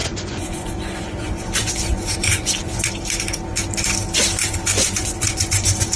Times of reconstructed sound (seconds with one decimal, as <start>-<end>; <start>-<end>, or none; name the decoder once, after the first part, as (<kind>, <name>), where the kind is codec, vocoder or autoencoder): 0.0-2.9 (vocoder, Vocos); 4.7-6.0